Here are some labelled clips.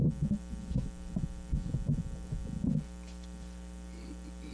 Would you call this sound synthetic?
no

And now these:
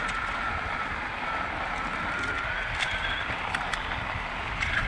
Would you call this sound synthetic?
no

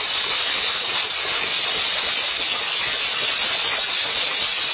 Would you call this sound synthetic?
no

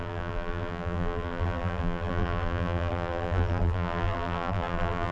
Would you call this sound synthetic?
yes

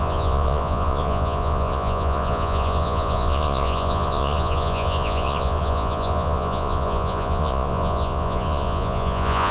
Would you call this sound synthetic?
yes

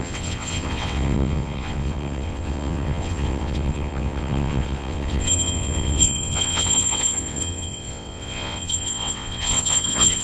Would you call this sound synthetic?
yes